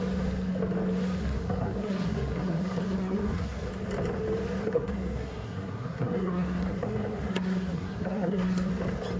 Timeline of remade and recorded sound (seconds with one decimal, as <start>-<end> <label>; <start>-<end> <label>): 0.0-1.2 recorded; 1.2-3.7 remade; 3.7-4.6 recorded; 4.6-8.7 remade; 8.7-9.2 recorded